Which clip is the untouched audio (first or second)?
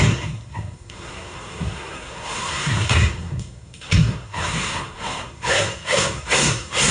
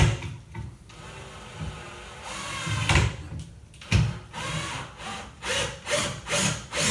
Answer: second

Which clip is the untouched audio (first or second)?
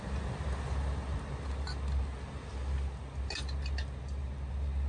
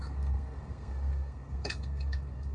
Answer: first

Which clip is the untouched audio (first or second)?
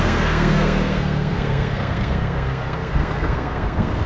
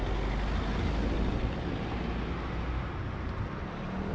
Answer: second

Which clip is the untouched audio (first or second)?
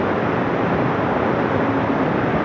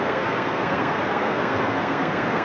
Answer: first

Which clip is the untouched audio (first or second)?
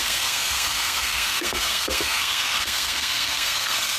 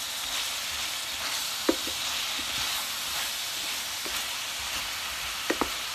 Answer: second